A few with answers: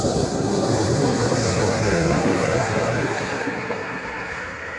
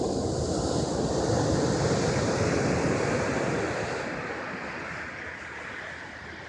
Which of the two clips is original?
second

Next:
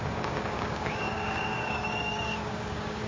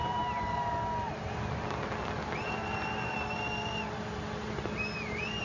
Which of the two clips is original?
second